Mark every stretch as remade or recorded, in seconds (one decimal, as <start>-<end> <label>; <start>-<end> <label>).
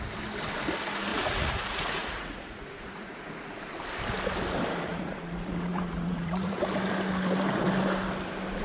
0.0-1.1 recorded; 1.1-3.6 remade; 3.6-4.9 recorded; 4.9-6.7 remade; 6.7-8.6 recorded